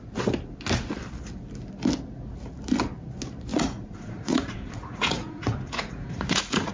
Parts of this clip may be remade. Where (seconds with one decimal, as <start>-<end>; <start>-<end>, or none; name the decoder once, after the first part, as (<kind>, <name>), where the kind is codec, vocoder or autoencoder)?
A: 3.5-6.7 (vocoder, Vocos)